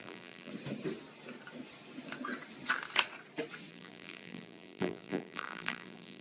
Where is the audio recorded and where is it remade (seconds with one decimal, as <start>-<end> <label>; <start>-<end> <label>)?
0.0-0.5 remade; 0.5-3.7 recorded; 3.7-6.2 remade

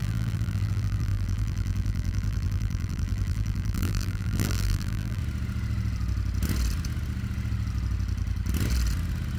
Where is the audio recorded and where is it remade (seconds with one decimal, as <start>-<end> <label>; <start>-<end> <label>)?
0.0-5.2 remade; 5.2-9.4 recorded

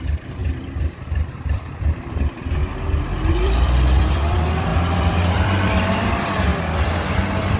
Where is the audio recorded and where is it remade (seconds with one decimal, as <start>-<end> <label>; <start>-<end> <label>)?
0.0-0.4 remade; 0.4-1.3 recorded; 1.3-2.6 remade; 2.6-3.3 recorded; 3.3-6.5 remade; 6.5-7.0 recorded; 7.0-7.6 remade

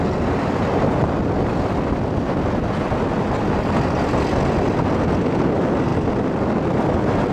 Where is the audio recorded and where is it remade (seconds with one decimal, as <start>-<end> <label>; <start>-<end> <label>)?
0.0-7.3 recorded

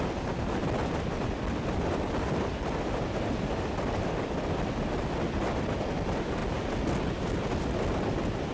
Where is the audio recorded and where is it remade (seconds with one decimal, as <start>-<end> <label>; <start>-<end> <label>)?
0.0-8.5 recorded